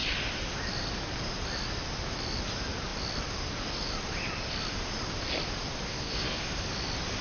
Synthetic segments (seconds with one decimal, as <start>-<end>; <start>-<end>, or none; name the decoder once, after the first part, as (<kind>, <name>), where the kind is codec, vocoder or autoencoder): 5.9-6.4 (codec, SNAC)